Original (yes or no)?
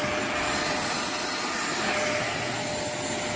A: yes